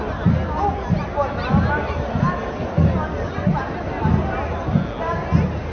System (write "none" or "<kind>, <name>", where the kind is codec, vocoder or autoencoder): none